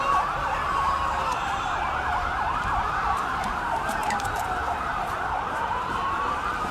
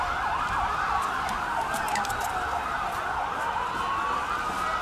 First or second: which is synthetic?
first